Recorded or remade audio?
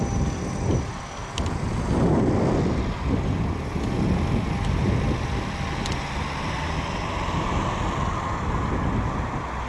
recorded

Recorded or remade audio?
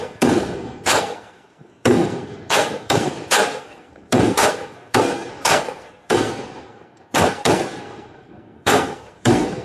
remade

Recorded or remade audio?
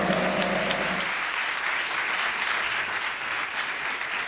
recorded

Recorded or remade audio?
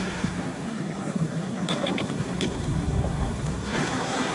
remade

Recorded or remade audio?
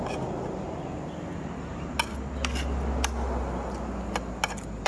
recorded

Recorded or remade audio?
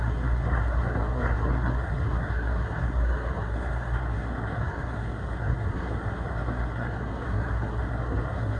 remade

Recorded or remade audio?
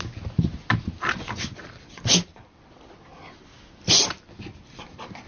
recorded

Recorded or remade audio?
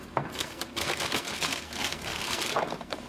remade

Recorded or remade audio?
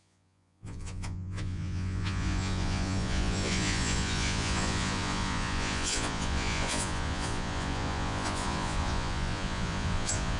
remade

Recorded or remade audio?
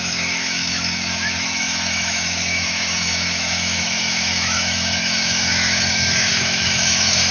remade